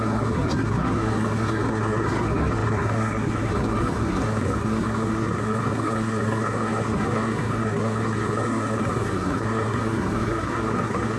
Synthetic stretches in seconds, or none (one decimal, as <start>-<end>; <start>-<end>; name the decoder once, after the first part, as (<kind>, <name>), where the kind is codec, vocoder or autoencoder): 0.0-11.2 (codec, SNAC)